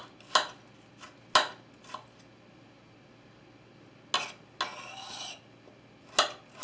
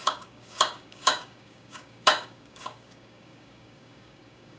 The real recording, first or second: first